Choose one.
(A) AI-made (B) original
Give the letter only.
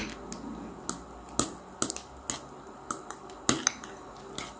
B